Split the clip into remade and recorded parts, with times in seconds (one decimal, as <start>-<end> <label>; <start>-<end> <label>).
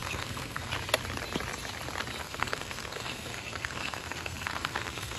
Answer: 0.0-0.7 remade; 0.7-2.2 recorded; 2.2-5.2 remade